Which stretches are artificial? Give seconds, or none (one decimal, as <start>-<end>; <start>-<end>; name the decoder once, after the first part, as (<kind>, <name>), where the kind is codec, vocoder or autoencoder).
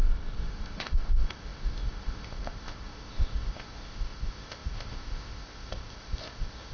0.0-6.7 (codec, ZipCodec)